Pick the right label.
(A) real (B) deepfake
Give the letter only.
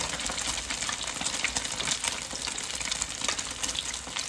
A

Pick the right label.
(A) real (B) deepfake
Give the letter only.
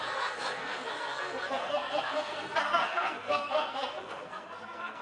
B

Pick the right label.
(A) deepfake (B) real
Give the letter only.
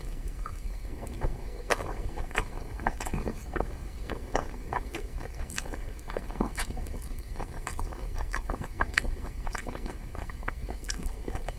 A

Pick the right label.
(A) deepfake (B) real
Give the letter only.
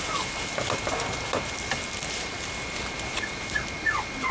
B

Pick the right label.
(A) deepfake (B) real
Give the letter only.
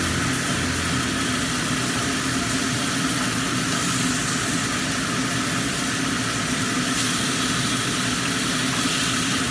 B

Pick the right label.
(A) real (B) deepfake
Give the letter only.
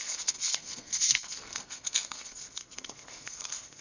B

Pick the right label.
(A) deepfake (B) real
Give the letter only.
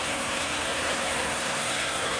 A